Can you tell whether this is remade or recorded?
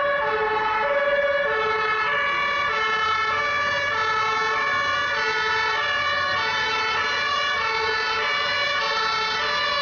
recorded